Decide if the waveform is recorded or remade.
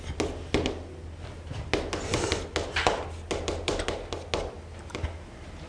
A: recorded